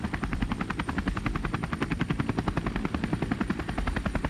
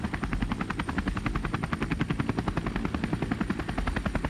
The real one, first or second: second